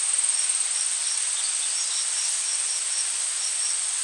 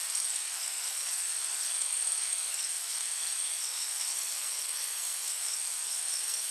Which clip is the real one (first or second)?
first